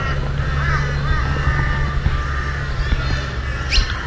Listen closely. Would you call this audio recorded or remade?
recorded